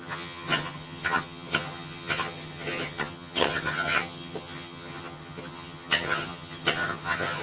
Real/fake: fake